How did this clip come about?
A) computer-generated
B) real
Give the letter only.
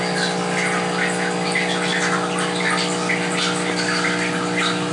B